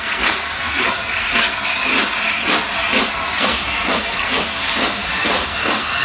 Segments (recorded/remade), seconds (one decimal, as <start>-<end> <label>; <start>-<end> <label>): 0.0-1.9 remade; 1.9-3.1 recorded; 3.1-6.0 remade